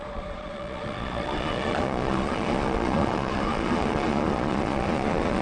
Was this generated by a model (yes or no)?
yes